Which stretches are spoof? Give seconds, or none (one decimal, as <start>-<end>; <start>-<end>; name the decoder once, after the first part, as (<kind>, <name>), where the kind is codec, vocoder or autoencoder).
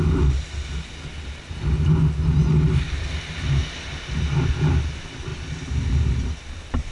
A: none